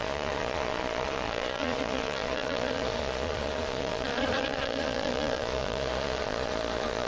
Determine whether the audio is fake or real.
fake